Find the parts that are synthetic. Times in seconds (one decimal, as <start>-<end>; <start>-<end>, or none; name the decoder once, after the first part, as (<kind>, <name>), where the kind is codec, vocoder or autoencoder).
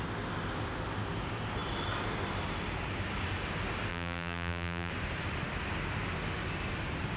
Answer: 3.9-4.9 (vocoder, BigVGAN v2)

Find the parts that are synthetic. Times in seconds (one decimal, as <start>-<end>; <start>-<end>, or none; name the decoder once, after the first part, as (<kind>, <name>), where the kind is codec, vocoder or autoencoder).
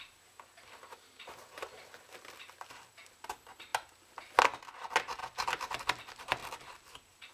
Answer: none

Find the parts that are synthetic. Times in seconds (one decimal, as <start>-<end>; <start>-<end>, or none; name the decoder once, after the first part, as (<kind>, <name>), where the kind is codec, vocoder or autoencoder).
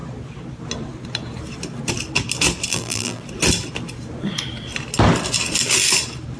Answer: 2.7-3.2 (vocoder, BigVGAN v2)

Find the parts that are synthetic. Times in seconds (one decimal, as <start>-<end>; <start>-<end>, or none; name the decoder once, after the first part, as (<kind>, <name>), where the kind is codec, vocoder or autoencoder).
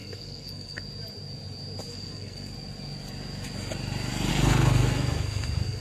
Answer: 0.0-0.8 (codec, SNAC); 1.9-2.5; 4.3-5.8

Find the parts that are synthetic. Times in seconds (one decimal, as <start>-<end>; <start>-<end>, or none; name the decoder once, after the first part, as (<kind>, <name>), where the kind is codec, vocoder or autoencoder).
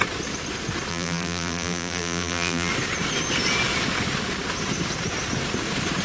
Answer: 0.9-2.7 (vocoder, BigVGAN v2)